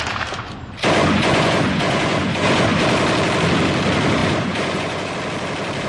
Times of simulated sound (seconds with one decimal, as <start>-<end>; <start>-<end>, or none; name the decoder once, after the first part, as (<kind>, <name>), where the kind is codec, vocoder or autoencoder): 1.0-2.8 (vocoder, Vocos); 4.2-5.1